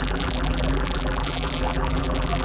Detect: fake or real fake